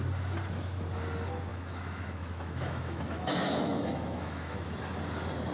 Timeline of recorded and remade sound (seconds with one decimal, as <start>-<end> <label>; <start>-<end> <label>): 0.0-1.5 recorded; 1.5-4.8 remade; 4.8-5.5 recorded